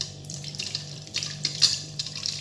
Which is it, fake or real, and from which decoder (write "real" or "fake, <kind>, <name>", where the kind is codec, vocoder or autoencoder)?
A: fake, vocoder, BigVGAN v2